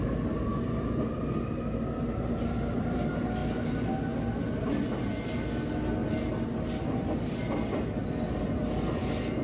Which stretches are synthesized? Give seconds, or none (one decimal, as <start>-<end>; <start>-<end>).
none

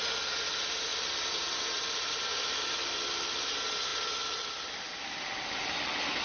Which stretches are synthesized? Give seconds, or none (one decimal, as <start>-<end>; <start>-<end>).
none

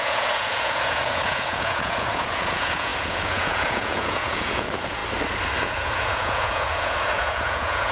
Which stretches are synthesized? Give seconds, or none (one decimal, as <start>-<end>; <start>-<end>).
0.0-5.0; 5.6-7.9